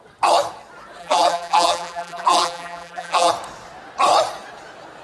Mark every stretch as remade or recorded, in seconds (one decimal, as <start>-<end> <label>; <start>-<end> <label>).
0.0-1.0 recorded; 1.0-3.3 remade; 3.3-5.0 recorded